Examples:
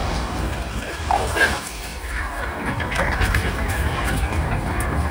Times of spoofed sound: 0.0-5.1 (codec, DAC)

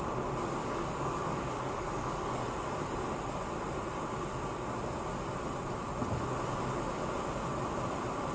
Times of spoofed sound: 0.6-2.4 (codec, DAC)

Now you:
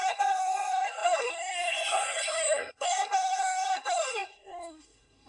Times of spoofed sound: 0.0-5.3 (codec, SNAC)